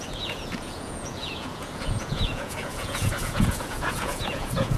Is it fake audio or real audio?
fake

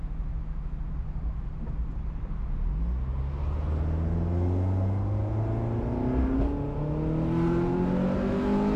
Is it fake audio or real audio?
real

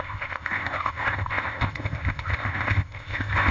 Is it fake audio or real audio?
fake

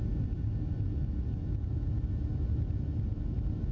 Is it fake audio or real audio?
real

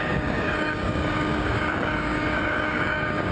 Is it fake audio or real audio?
fake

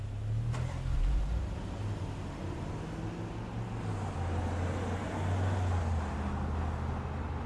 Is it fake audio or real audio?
real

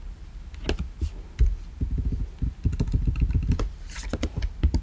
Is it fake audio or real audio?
real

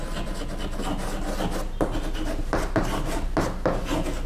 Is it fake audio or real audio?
real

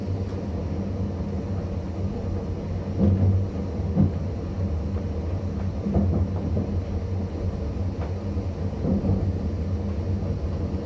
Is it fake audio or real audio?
real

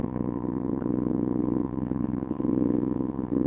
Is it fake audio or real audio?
fake